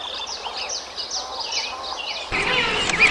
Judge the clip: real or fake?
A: real